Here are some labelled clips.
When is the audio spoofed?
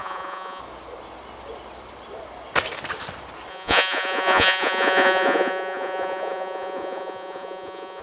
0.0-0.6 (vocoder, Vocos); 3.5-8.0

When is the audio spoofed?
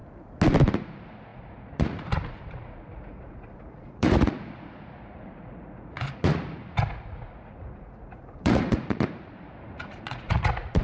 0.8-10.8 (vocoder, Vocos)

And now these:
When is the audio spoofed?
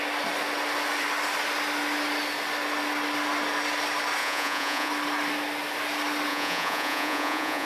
4.2-4.9 (vocoder, Vocos); 6.3-7.7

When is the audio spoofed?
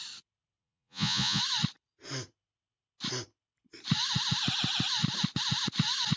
0.6-1.4 (vocoder, Vocos)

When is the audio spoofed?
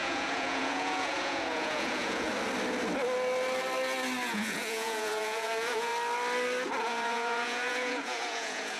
0.0-2.3 (vocoder, Vocos); 4.3-5.9; 6.8-8.8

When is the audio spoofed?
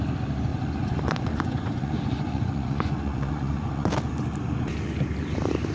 0.5-3.9 (vocoder, Vocos)